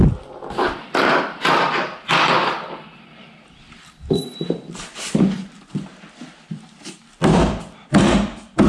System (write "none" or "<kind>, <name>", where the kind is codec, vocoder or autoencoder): vocoder, BigVGAN v2